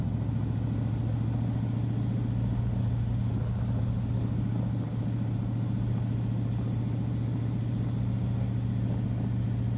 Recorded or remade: recorded